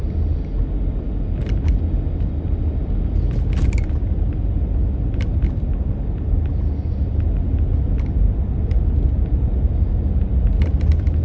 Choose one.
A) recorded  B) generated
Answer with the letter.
A